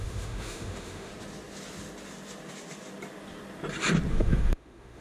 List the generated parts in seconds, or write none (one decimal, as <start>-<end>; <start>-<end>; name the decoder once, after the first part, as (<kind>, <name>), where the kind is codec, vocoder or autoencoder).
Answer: 0.0-1.1 (autoencoder, DAC-VAE); 4.1-5.0